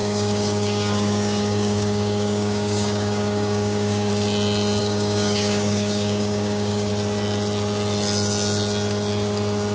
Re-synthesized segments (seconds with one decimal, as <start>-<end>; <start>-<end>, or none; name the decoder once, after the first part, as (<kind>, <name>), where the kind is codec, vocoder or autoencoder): 0.0-4.1 (codec, DAC); 4.8-6.9

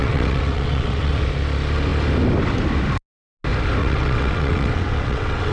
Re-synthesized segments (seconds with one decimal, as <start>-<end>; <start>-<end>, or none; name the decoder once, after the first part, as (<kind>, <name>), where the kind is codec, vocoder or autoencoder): 0.0-1.1 (vocoder, WaveNeXt); 3.8-5.5

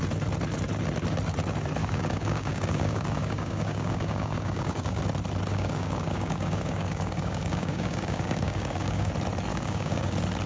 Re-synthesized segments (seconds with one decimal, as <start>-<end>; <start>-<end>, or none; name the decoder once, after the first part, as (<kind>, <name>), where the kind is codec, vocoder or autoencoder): 1.8-5.0 (codec, DAC); 5.5-9.1; 9.5-10.1

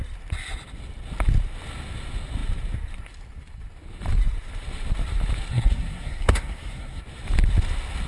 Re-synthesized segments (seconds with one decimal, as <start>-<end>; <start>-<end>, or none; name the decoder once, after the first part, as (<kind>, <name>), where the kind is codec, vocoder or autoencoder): 5.5-7.0 (codec, SNAC)

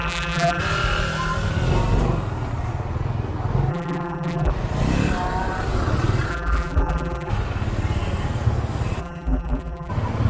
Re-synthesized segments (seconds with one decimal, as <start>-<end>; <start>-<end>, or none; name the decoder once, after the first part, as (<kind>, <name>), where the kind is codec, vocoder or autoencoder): 0.0-0.6 (vocoder, BigVGAN v2); 3.7-4.5; 6.3-7.3; 9.0-9.9

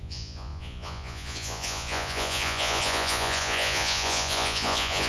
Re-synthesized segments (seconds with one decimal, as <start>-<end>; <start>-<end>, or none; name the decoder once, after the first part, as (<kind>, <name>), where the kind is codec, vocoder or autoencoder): 0.0-5.1 (vocoder, Vocos)

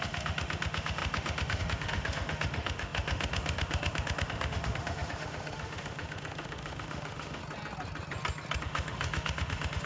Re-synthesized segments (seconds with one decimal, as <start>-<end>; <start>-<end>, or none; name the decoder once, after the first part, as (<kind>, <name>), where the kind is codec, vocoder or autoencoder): 0.0-7.4 (autoencoder, DAC-VAE); 8.6-9.9